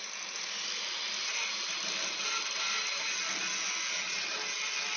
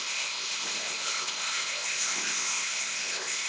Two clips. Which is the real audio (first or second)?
first